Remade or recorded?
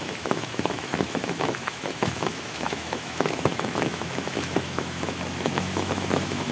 remade